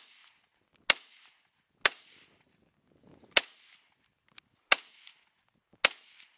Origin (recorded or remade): recorded